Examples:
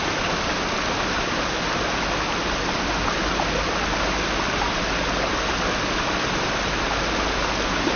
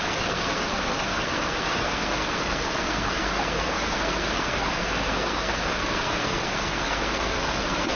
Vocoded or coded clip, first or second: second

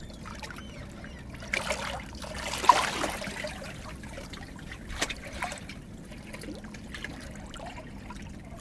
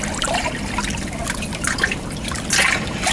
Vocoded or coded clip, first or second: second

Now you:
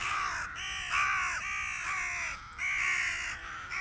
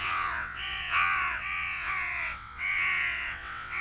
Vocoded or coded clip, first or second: second